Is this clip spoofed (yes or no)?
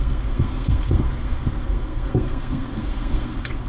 yes